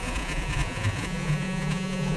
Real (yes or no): no